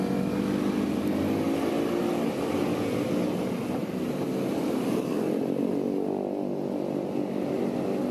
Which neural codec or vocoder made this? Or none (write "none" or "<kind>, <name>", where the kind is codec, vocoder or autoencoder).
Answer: none